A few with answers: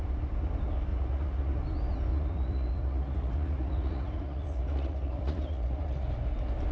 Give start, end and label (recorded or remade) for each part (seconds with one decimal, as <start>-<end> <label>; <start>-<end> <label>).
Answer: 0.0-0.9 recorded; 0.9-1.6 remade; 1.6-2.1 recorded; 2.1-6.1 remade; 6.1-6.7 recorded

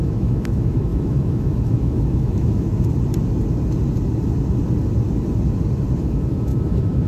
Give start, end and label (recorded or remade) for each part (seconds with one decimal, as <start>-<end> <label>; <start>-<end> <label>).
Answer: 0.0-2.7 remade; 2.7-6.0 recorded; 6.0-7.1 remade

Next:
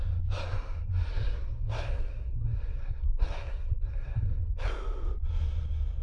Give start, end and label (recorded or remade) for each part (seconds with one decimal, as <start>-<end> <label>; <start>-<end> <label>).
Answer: 0.0-1.1 recorded; 1.1-4.7 remade; 4.7-6.0 recorded

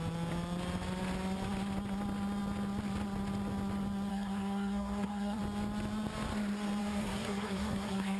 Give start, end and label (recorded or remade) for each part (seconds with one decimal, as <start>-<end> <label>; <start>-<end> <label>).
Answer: 0.0-4.1 recorded; 4.1-5.4 remade; 5.4-6.8 recorded; 6.8-8.2 remade